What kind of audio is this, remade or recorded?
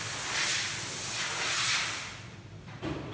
recorded